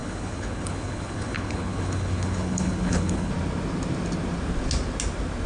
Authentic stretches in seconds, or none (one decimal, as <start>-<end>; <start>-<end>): 3.3-5.5